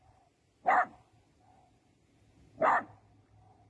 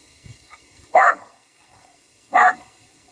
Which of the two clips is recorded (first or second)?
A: first